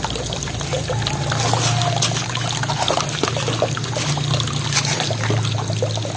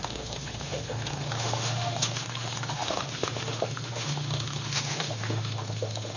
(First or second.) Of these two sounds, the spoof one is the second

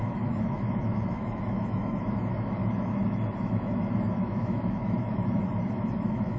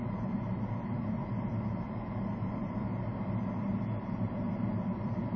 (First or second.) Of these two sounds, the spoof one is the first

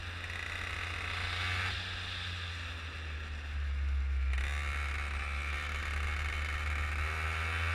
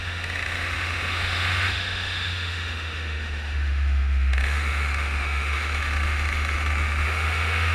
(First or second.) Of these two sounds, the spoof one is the second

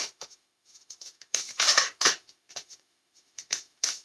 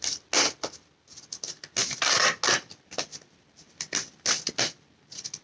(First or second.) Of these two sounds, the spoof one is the first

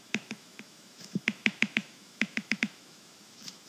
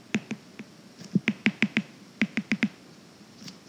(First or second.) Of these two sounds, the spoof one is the first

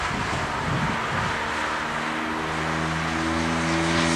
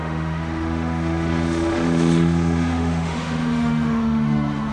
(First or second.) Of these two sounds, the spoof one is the second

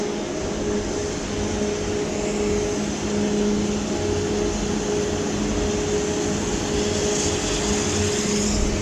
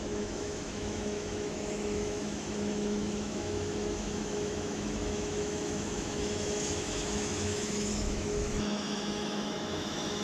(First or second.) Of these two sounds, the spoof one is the second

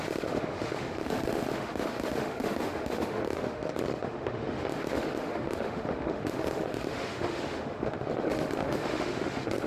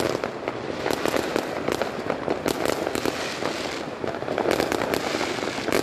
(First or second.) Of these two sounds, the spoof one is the first